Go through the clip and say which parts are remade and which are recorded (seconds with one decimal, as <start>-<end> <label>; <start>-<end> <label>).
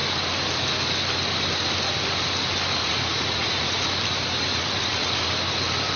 0.0-2.8 recorded; 2.8-3.8 remade; 3.8-4.5 recorded; 4.5-5.3 remade; 5.3-6.0 recorded